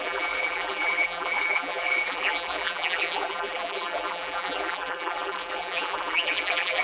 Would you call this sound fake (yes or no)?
yes